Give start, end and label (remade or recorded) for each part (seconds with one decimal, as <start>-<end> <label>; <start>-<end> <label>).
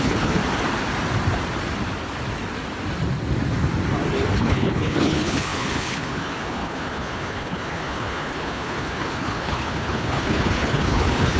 0.0-0.4 remade; 0.4-4.4 recorded; 4.4-11.4 remade